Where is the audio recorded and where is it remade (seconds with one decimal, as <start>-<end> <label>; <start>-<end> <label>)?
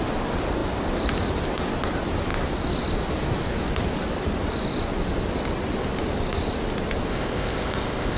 0.0-7.1 recorded; 7.1-8.2 remade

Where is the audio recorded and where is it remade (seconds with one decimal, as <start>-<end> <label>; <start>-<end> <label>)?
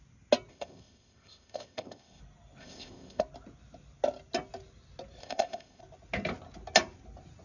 0.0-0.5 recorded; 0.5-2.2 remade; 2.2-2.6 recorded; 2.6-3.2 remade; 3.2-5.2 recorded; 5.2-5.8 remade; 5.8-7.4 recorded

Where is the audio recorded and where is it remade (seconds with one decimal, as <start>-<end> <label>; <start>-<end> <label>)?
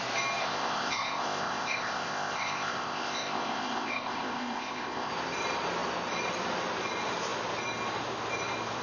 0.0-0.4 recorded; 0.4-5.1 remade; 5.1-8.8 recorded